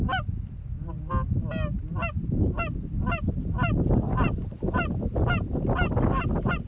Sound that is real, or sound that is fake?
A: real